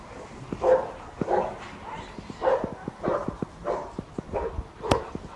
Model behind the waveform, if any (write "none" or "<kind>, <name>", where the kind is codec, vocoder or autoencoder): none